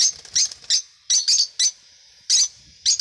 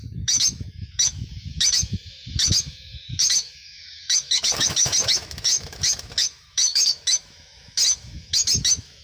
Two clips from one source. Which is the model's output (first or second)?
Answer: second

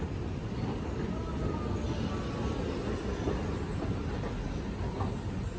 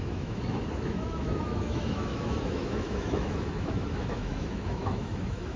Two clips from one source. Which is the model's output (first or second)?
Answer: second